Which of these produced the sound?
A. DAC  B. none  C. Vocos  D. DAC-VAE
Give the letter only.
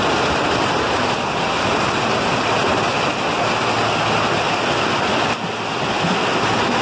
B